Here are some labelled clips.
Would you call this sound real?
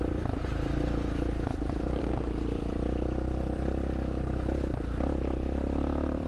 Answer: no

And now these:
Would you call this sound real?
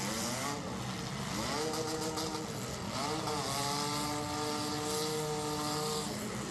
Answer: yes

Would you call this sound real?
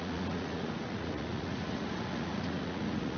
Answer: no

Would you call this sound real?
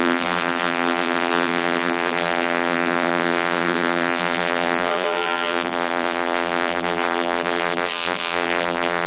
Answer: no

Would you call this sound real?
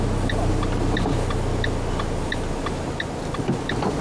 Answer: yes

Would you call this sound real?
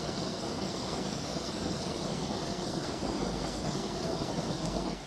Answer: no